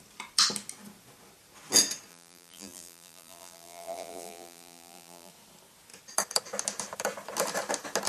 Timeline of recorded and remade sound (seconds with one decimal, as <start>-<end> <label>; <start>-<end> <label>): 0.0-2.1 recorded; 2.1-5.3 remade; 5.3-8.1 recorded